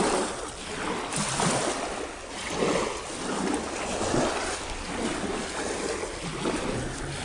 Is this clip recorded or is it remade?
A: recorded